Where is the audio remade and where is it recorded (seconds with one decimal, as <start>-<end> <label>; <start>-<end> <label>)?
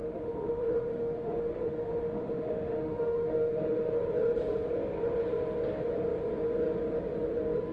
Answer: 0.0-4.0 remade; 4.0-7.7 recorded